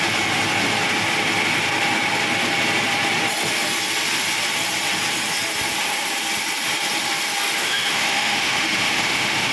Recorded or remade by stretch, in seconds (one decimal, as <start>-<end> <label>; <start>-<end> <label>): 0.0-7.6 recorded; 7.6-9.5 remade